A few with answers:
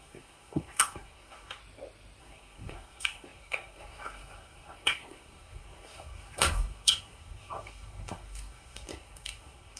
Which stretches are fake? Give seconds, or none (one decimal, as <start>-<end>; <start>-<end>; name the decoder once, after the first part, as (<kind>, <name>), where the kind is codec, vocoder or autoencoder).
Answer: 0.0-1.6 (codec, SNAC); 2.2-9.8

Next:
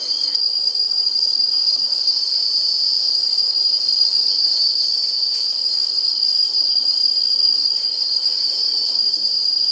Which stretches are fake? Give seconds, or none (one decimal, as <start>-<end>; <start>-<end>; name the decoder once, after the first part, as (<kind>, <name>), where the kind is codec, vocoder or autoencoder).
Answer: 0.0-2.3 (codec, DAC); 3.0-9.7

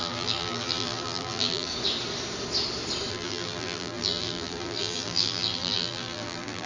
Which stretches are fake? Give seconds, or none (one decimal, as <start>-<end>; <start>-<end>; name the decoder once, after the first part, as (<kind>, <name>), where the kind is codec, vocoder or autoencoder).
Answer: 0.0-1.7 (vocoder, BigVGAN v2); 3.1-6.7

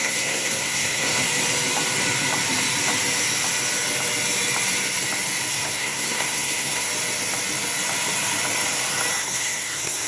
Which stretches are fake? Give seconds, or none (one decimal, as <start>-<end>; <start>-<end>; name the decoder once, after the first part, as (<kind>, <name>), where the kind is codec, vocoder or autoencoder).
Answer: 0.0-1.3 (codec, SNAC); 5.5-6.9; 9.2-10.1